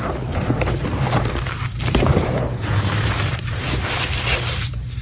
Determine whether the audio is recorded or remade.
remade